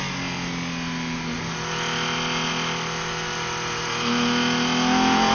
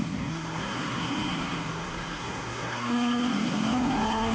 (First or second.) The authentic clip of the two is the first